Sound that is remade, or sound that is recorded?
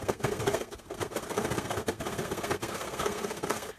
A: remade